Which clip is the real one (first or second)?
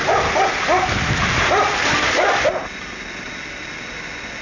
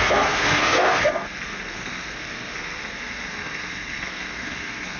first